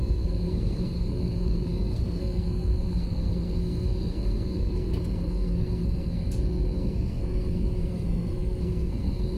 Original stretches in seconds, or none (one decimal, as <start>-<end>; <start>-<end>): none